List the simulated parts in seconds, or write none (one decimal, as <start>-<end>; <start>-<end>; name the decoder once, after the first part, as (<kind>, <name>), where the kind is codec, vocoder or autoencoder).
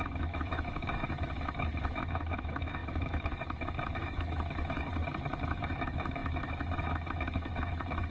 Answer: 0.0-4.9 (autoencoder, DAC-VAE); 5.4-8.1